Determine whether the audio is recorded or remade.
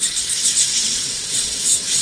remade